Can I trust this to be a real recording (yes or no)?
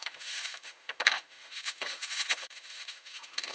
no